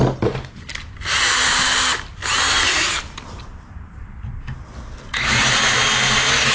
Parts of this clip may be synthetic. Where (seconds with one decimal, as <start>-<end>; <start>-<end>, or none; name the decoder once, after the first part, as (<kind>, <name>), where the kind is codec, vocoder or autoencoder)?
none